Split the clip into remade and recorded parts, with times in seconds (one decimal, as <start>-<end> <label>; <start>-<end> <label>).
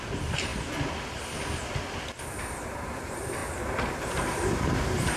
0.0-0.5 remade; 0.5-2.7 recorded; 2.7-3.4 remade; 3.4-3.9 recorded; 3.9-5.2 remade